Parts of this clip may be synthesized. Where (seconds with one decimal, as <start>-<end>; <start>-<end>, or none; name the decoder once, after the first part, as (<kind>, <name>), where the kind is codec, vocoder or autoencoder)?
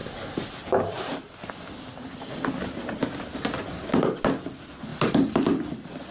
0.0-1.7 (vocoder, BigVGAN v2)